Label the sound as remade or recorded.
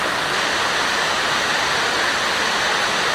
recorded